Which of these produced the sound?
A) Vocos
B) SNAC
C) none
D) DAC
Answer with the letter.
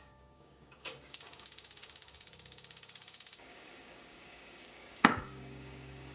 D